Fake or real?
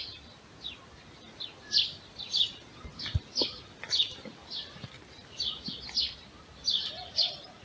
real